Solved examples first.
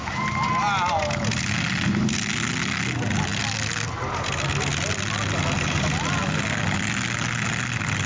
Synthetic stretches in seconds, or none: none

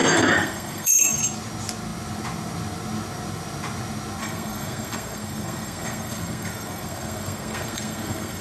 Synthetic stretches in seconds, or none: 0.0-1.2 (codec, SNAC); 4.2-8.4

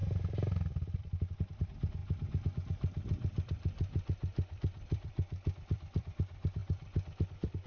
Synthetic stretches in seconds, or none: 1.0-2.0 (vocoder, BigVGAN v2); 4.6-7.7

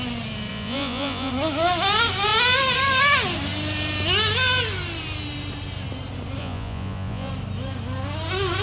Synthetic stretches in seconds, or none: 0.5-1.3 (vocoder, Vocos); 6.4-7.3

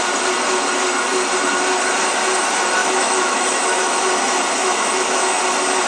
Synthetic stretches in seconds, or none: 2.8-4.0 (autoencoder, DAC-VAE); 4.6-5.4